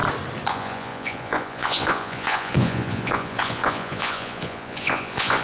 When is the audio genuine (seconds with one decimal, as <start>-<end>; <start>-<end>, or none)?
0.0-0.5